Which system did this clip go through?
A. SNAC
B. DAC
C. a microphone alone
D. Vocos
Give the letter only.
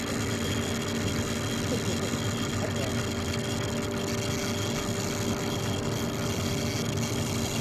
C